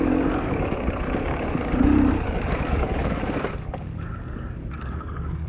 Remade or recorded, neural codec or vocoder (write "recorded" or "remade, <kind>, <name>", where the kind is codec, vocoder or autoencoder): remade, codec, DAC